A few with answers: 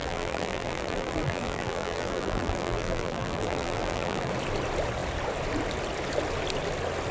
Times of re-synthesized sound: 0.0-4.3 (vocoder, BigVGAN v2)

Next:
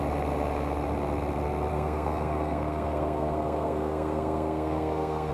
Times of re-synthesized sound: 1.7-5.3 (codec, SNAC)

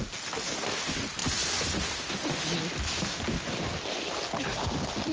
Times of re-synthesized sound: none

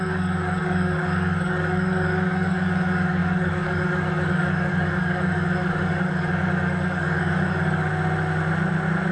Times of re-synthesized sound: 0.0-7.9 (codec, DAC)

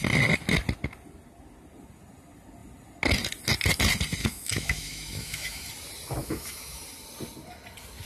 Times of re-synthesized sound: 4.2-5.7 (autoencoder, DAC-VAE); 6.2-6.8

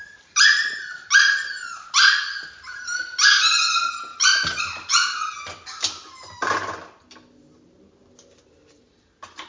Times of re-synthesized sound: 4.1-4.6 (vocoder, BigVGAN v2)